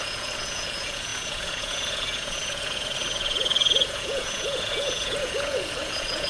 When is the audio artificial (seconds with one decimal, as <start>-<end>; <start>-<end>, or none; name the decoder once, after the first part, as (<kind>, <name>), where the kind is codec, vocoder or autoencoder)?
0.0-6.3 (vocoder, Vocos)